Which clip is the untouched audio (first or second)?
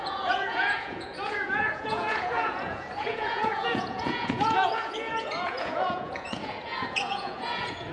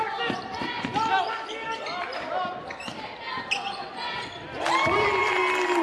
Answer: second